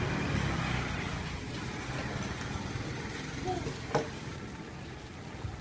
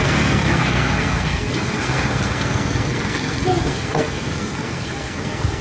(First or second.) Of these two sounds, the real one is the first